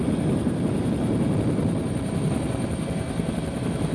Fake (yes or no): no